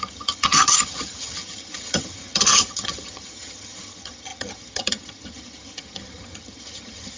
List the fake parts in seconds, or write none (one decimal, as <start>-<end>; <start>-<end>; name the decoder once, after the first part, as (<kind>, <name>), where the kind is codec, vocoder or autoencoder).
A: 0.0-7.2 (vocoder, HiFi-GAN)